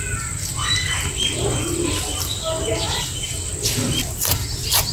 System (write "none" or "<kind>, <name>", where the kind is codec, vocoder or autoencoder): none